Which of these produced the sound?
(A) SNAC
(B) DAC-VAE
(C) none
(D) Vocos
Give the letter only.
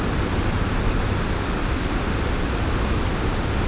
C